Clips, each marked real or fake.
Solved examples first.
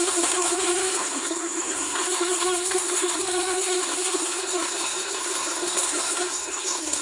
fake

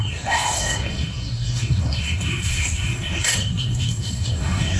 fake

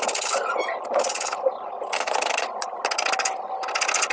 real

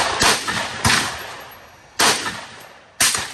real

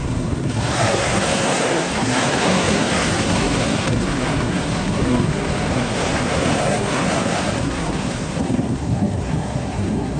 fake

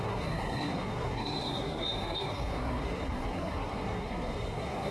fake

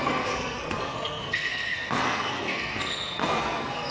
fake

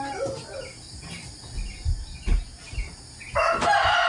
real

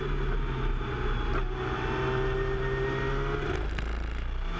real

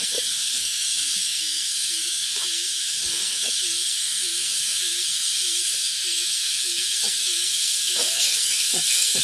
fake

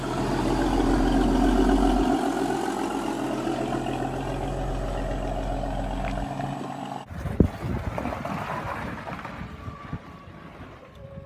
real